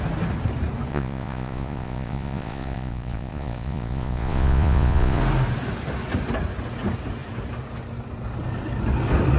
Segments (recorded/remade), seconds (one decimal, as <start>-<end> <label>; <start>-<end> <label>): 0.0-0.9 recorded; 0.9-5.2 remade; 5.2-9.4 recorded